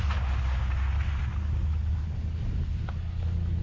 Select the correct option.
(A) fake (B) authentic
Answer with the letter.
B